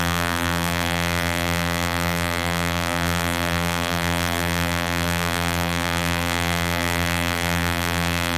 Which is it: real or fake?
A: fake